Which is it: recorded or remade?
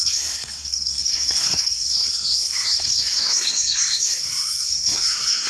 remade